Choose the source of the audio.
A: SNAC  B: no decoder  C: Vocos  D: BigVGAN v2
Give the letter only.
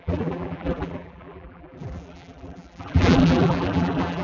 D